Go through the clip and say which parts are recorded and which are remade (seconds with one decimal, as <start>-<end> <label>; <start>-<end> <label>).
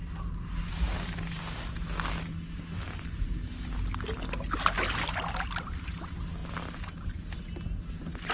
0.0-8.3 recorded